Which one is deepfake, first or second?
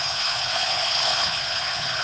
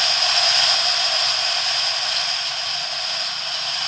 first